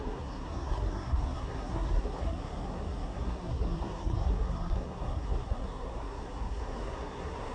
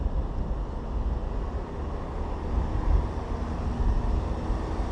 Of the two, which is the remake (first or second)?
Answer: first